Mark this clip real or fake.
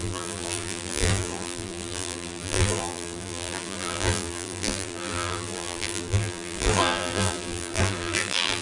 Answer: fake